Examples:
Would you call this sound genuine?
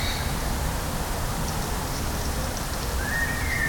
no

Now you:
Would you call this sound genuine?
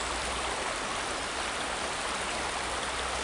yes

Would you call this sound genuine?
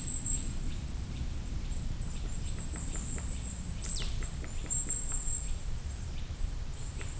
no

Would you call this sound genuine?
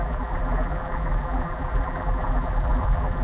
no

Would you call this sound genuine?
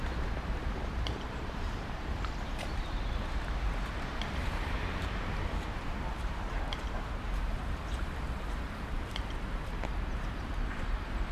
no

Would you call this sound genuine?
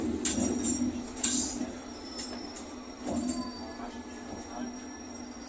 yes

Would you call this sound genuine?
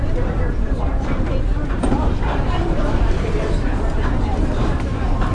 no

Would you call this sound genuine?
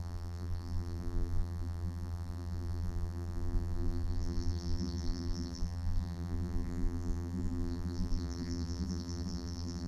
no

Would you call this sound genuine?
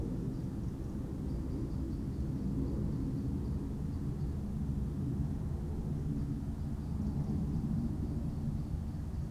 yes